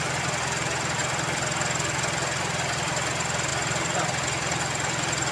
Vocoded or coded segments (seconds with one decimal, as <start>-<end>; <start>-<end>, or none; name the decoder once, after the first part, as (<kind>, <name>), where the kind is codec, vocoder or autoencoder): none